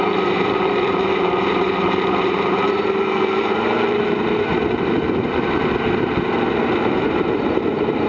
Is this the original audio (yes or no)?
no